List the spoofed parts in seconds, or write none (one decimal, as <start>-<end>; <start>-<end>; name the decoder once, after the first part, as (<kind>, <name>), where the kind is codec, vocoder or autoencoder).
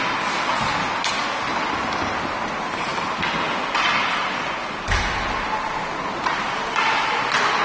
none